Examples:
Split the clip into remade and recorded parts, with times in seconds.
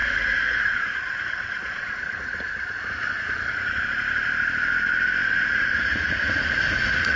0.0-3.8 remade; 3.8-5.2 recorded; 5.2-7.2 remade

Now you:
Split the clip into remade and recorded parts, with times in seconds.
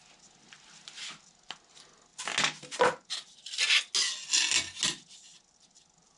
0.0-6.2 recorded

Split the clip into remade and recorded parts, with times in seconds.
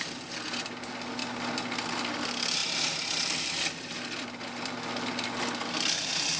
0.0-6.4 recorded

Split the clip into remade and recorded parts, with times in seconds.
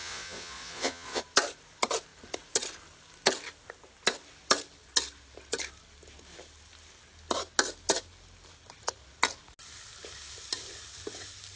0.0-1.2 remade; 1.2-11.6 recorded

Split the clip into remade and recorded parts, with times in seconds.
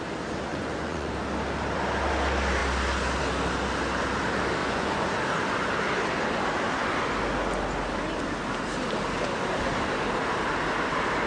0.0-0.5 recorded; 0.5-1.1 remade; 1.1-4.6 recorded; 4.6-5.1 remade; 5.1-11.3 recorded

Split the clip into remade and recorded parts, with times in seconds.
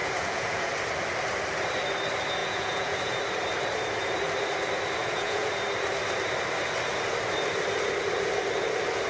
0.0-0.7 remade; 0.7-2.4 recorded; 2.4-3.2 remade; 3.2-5.0 recorded; 5.0-5.5 remade; 5.5-9.1 recorded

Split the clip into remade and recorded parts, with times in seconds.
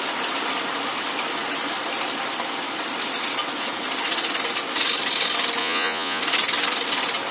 0.0-5.6 recorded; 5.6-6.2 remade; 6.2-7.3 recorded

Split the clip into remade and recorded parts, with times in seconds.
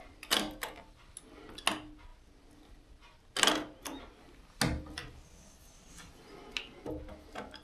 0.0-7.6 recorded